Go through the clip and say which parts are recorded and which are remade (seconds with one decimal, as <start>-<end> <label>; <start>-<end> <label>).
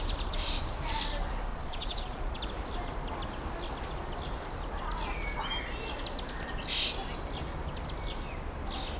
0.0-1.5 recorded; 1.5-2.4 remade; 2.4-9.0 recorded